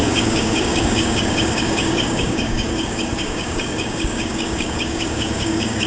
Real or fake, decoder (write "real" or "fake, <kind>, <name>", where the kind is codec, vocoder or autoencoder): fake, codec, DAC